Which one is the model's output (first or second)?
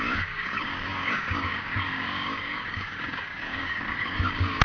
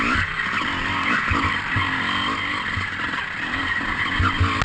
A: first